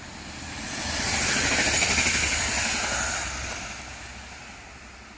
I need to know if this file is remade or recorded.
recorded